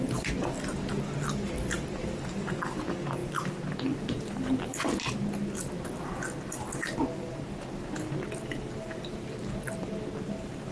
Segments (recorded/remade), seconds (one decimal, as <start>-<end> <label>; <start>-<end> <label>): 0.0-10.7 recorded

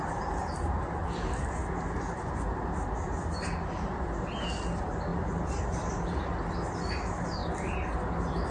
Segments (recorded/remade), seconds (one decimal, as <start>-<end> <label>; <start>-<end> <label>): 0.0-8.5 recorded